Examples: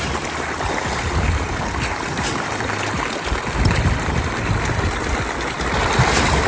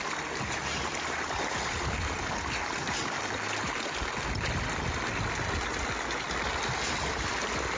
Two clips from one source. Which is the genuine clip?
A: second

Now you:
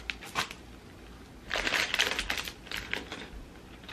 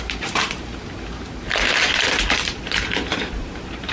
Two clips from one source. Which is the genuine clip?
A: first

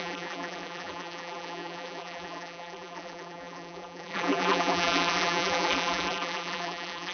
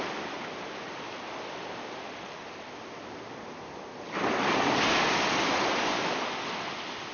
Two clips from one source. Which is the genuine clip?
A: second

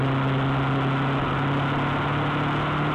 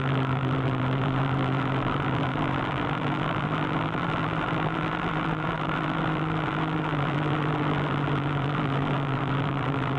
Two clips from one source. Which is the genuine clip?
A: first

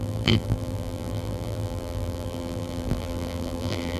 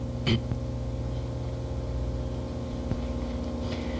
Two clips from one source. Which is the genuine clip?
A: second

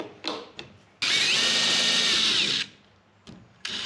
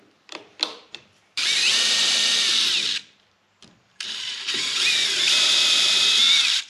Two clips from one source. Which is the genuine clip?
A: first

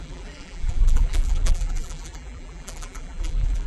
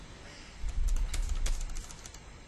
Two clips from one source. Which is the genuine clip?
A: second